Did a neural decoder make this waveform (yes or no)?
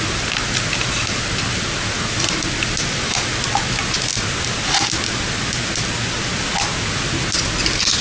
no